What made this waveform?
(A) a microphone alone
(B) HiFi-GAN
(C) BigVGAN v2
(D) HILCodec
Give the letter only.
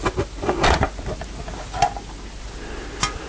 A